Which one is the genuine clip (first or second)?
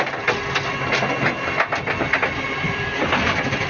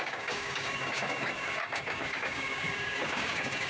first